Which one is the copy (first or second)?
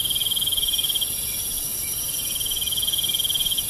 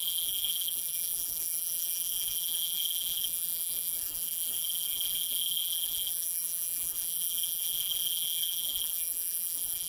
second